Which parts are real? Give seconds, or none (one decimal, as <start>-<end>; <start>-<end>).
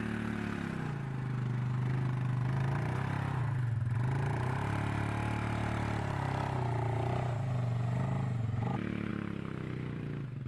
0.0-9.1